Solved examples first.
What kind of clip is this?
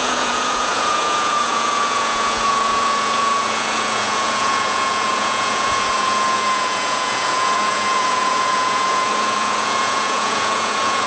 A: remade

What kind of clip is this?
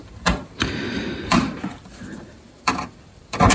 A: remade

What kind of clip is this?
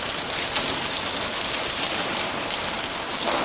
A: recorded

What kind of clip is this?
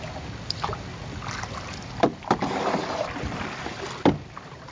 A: recorded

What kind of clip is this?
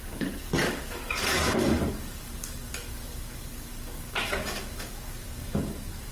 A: remade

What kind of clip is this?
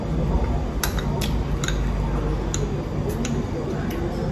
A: recorded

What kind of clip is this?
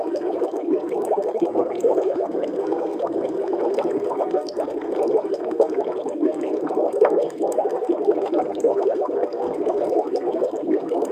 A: remade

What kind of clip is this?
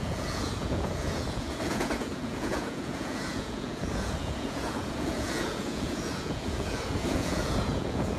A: remade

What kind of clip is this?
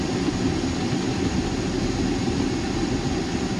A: recorded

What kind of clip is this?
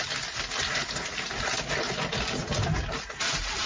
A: recorded